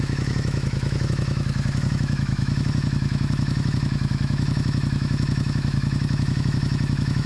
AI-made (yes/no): yes